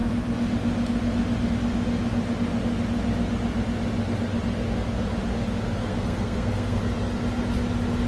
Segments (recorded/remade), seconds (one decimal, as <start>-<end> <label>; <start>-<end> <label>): 0.0-5.8 recorded; 5.8-6.8 remade; 6.8-8.1 recorded